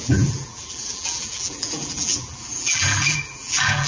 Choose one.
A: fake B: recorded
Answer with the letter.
A